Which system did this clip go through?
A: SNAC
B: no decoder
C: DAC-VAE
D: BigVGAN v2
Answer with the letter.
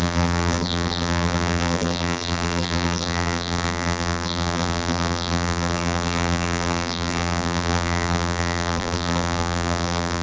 D